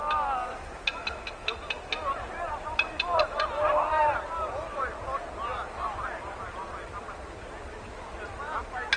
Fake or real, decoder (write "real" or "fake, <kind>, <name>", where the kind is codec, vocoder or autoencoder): real